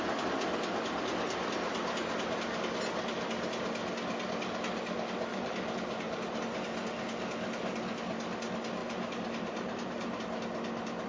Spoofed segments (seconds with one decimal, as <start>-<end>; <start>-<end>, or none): 5.3-6.4; 8.8-10.2